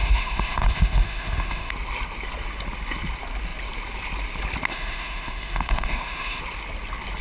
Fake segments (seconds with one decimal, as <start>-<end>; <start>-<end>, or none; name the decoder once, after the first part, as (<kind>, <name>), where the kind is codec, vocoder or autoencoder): 0.0-1.7 (autoencoder, DAC-VAE); 4.7-6.4